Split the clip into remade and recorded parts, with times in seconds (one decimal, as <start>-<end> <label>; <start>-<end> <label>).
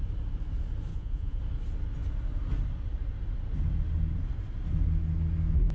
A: 0.0-0.9 recorded; 0.9-1.4 remade; 1.4-5.7 recorded